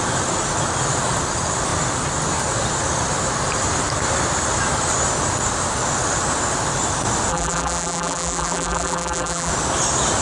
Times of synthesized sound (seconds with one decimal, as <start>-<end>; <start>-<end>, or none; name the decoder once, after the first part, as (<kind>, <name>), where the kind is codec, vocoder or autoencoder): 7.3-9.5 (vocoder, BigVGAN v2)